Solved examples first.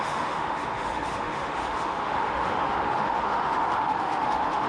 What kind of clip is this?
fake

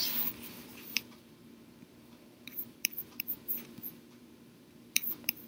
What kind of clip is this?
fake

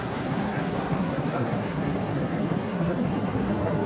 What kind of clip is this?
fake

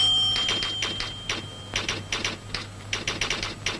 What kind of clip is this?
real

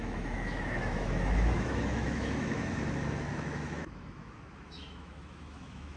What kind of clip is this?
fake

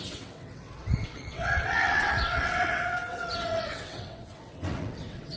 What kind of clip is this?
fake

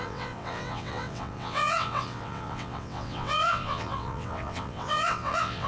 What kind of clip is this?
fake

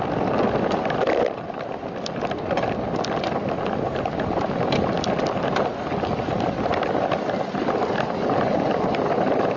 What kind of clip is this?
real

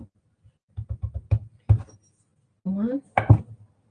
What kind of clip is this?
real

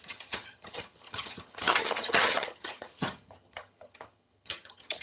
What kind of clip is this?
fake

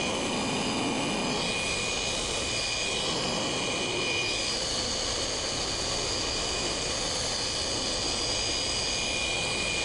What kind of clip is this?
real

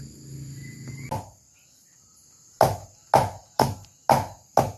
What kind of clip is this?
real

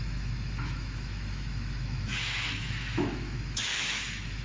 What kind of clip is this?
fake